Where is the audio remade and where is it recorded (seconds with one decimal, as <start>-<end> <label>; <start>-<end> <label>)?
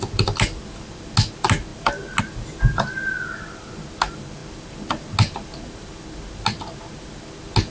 0.0-7.7 recorded